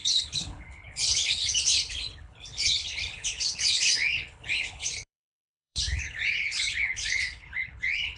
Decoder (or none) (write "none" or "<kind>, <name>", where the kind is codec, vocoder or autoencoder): codec, HILCodec